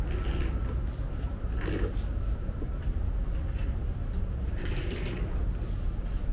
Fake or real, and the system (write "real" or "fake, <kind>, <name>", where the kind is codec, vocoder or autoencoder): real